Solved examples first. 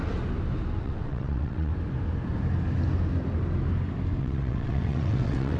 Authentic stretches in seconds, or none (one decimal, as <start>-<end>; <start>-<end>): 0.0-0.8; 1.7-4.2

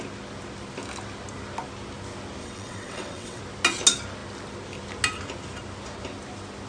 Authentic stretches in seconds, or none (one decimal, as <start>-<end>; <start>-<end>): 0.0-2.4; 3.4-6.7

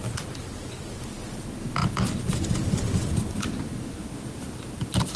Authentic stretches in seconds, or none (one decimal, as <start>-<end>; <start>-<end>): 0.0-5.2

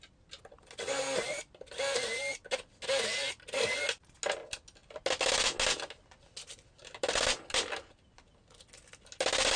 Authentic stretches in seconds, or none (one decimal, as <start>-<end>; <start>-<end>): 0.0-9.6

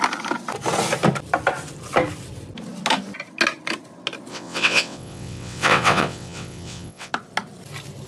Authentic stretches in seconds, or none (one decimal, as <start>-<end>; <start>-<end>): 0.0-4.3; 7.1-8.1

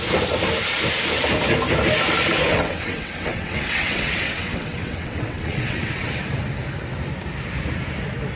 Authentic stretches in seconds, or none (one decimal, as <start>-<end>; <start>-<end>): 0.0-2.5; 6.1-8.4

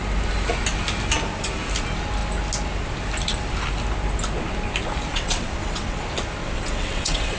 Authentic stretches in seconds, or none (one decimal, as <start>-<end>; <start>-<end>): 0.0-5.1; 6.0-6.4

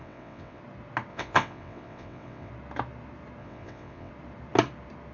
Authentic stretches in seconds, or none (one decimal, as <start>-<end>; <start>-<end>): 0.6-1.1; 2.5-3.4; 4.1-5.1